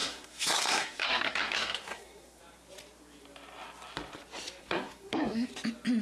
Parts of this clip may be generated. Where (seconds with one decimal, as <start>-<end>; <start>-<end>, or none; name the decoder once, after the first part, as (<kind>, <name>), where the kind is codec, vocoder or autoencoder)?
0.0-2.4 (codec, SNAC); 4.6-5.5